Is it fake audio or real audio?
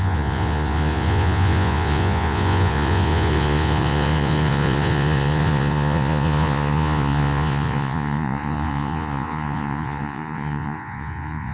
fake